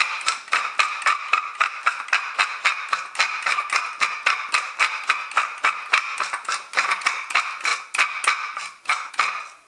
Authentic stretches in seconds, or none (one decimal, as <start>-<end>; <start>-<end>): 0.0-9.7